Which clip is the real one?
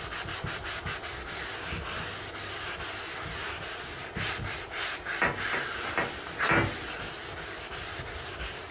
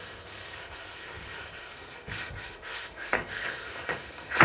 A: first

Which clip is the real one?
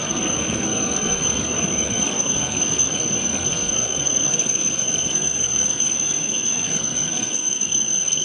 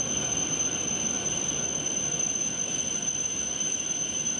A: second